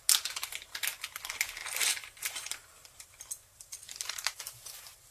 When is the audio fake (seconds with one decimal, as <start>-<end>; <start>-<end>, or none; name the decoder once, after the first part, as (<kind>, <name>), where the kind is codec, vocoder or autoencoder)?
none